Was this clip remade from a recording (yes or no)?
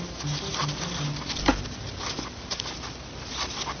no